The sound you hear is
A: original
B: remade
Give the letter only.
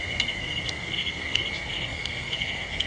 B